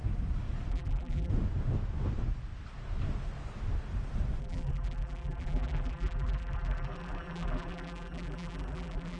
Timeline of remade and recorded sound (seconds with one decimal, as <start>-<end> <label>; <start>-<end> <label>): 0.0-0.7 recorded; 0.7-1.3 remade; 1.3-4.4 recorded; 4.4-9.2 remade

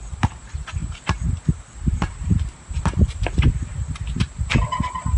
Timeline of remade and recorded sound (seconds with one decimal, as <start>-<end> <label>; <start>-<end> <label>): 0.0-3.8 remade; 3.8-4.8 recorded; 4.8-5.2 remade